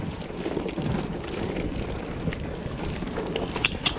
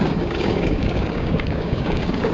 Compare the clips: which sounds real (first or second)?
first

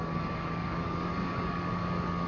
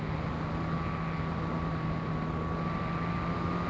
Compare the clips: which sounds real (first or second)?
second